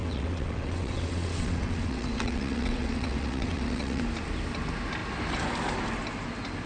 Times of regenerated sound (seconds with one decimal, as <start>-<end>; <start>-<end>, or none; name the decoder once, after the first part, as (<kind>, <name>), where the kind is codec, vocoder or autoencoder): 0.0-4.0 (vocoder, WaveNeXt)